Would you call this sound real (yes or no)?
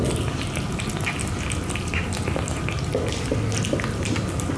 yes